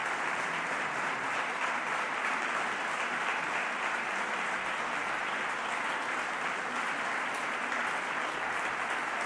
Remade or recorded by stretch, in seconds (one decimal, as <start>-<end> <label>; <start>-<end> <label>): 0.0-9.3 recorded